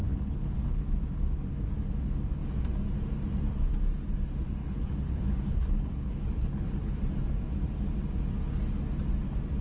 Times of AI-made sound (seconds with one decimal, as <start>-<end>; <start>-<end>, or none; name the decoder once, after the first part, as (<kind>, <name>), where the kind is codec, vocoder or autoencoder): 0.0-0.8 (codec, HILCodec); 4.6-7.0